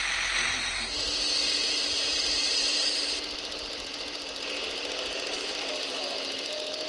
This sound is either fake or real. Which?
real